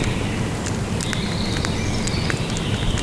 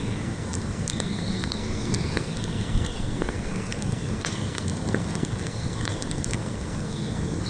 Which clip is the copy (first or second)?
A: second